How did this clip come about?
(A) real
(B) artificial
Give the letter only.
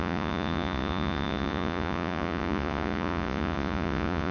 B